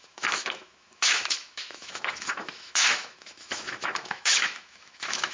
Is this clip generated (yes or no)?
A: yes